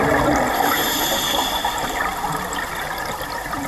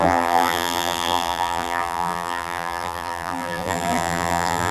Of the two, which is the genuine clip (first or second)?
first